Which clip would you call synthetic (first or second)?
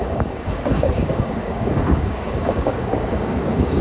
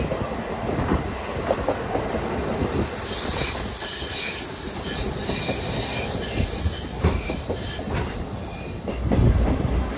first